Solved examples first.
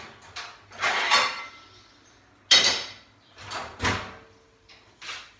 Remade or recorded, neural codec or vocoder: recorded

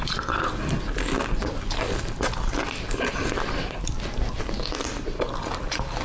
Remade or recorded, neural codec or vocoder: recorded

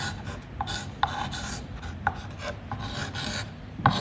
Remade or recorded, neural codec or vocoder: recorded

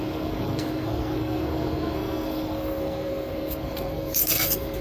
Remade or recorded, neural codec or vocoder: remade, codec, SNAC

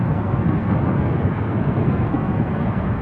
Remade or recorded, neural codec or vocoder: remade, codec, SNAC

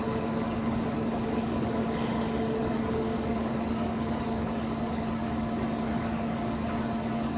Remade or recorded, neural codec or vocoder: remade, codec, DAC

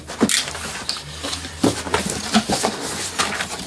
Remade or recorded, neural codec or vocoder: recorded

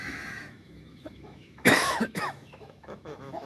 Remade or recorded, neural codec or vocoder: remade, autoencoder, DAC-VAE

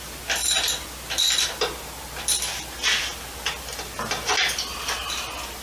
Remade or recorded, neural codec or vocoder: recorded